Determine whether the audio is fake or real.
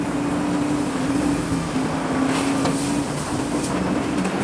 real